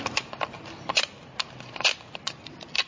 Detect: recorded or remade recorded